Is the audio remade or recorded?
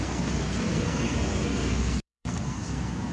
remade